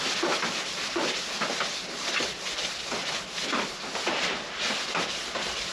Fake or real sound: real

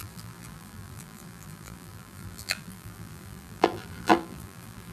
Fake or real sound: fake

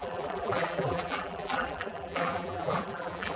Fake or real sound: fake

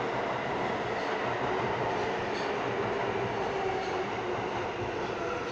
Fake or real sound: real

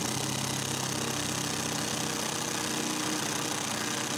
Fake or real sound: real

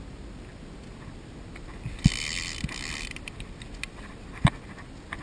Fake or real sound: real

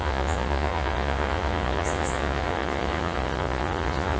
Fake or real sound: fake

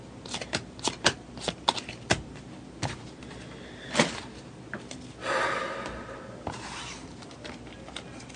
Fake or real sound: real